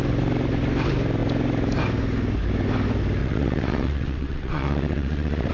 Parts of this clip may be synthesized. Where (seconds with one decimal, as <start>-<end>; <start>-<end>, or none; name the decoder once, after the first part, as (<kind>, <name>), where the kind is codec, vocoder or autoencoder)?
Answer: 3.2-5.5 (vocoder, WaveNeXt)